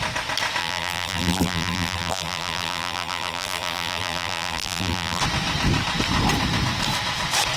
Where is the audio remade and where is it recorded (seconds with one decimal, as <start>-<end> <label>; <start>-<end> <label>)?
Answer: 0.0-0.6 recorded; 0.6-5.2 remade; 5.2-7.6 recorded

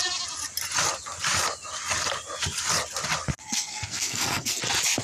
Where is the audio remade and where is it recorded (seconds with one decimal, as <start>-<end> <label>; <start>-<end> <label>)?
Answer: 0.0-3.3 recorded; 3.3-4.6 remade; 4.6-5.0 recorded

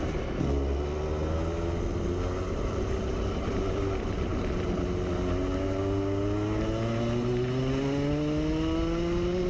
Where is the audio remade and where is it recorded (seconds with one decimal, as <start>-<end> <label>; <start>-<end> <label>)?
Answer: 0.0-9.5 recorded

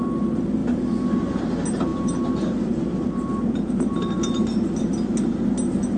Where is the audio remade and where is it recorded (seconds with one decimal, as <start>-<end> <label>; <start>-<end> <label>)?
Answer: 0.0-6.0 recorded

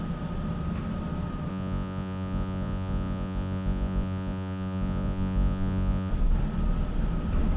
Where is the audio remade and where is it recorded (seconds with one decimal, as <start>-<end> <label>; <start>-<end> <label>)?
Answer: 0.0-1.5 recorded; 1.5-6.1 remade; 6.1-7.6 recorded

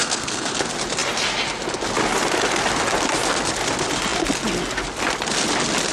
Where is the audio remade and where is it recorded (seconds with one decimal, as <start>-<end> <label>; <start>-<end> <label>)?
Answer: 0.0-0.5 remade; 0.5-5.9 recorded

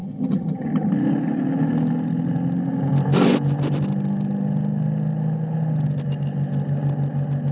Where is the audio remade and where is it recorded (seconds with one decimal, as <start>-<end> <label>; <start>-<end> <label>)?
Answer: 0.0-0.9 remade; 0.9-7.5 recorded

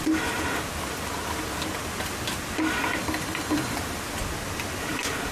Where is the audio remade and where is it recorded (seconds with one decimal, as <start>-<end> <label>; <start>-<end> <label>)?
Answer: 0.0-3.0 recorded; 3.0-3.8 remade; 3.8-5.3 recorded